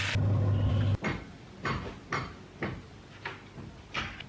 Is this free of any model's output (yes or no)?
yes